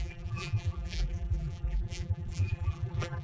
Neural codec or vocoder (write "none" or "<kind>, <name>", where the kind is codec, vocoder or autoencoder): vocoder, BigVGAN v2